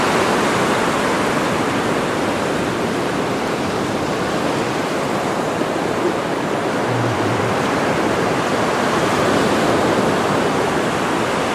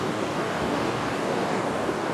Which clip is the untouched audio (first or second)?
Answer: first